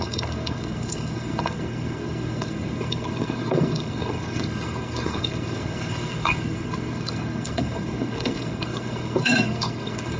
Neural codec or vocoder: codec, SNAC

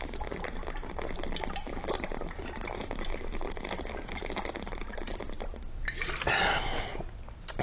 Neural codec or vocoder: none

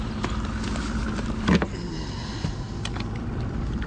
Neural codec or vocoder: none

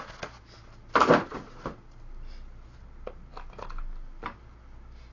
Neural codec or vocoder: none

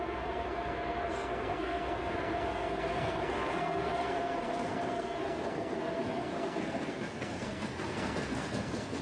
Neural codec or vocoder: codec, SNAC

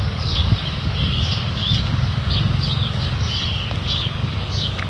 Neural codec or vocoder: codec, DAC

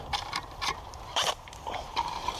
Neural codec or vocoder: vocoder, BigVGAN v2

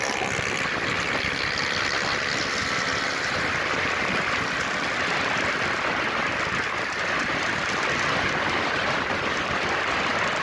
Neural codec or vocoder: none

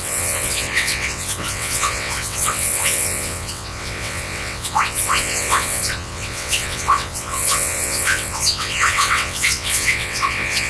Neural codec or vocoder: vocoder, WaveNeXt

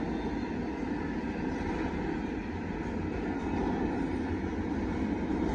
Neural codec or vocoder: none